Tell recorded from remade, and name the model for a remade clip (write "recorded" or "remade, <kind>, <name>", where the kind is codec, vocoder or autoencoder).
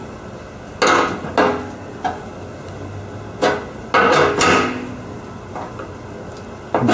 recorded